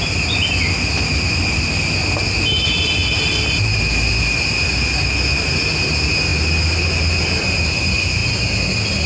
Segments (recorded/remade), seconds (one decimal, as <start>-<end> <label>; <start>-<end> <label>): 0.0-9.1 recorded